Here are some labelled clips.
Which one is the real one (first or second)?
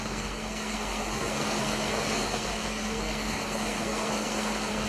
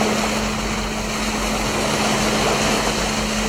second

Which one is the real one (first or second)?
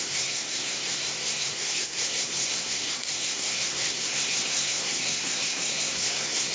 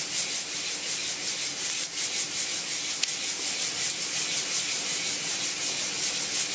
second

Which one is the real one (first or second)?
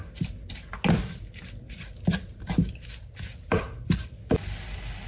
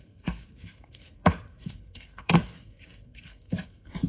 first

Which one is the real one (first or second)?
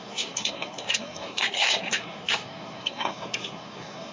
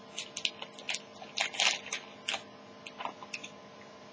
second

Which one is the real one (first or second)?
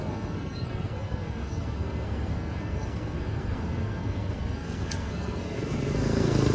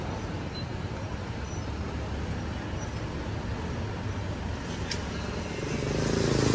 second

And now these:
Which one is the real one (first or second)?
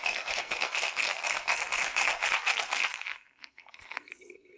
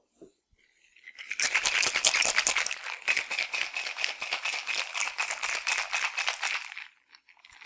second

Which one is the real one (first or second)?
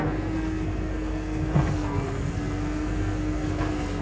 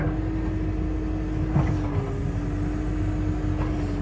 second